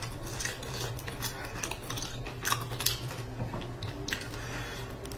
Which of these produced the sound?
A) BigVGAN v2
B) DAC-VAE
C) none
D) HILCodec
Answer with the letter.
C